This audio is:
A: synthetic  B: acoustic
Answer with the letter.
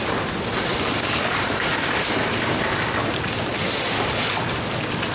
B